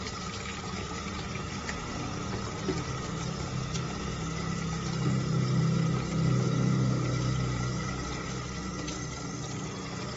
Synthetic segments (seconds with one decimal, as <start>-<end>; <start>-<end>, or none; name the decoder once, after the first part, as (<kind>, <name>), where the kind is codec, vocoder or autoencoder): none